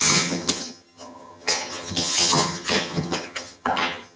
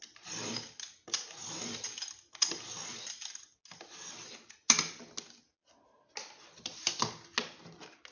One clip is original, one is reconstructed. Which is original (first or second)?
second